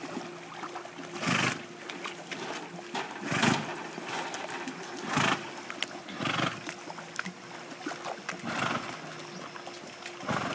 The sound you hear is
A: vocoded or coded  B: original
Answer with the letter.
B